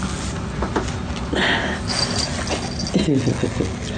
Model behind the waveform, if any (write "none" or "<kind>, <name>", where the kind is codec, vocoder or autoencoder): none